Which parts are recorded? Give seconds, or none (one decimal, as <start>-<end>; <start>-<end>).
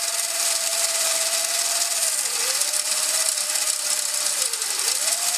0.0-5.4